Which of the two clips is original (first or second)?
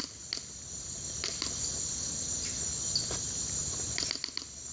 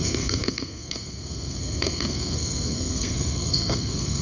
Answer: first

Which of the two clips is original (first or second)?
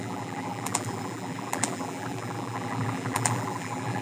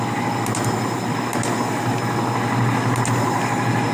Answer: second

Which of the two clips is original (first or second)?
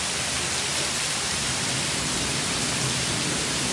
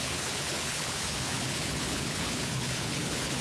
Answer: first